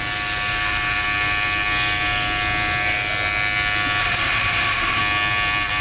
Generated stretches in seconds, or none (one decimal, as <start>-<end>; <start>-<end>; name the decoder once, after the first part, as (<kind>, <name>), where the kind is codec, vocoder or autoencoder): 4.0-5.0 (autoencoder, DAC-VAE)